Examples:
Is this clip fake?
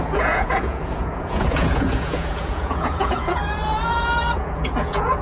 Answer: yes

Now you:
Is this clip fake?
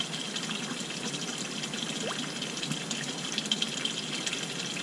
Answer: no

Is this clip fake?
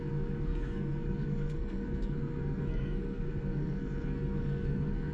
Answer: yes